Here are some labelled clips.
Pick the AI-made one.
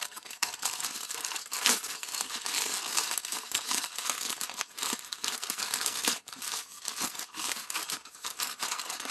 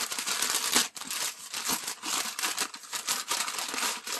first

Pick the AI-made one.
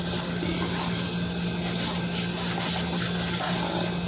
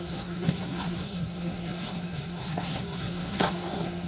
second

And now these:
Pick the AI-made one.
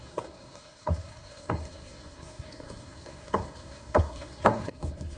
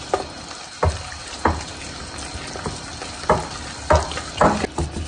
first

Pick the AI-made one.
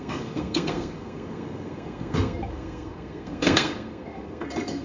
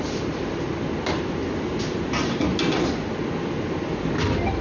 first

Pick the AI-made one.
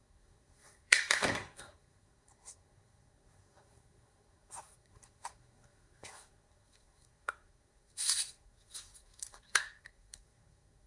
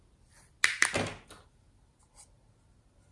first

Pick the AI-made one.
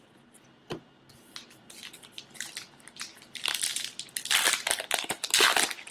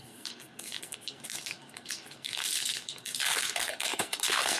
second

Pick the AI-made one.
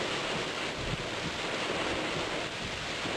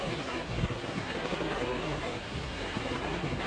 second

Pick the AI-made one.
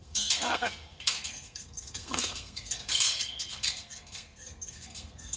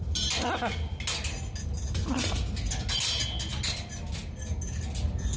first